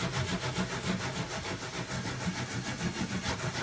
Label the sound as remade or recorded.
recorded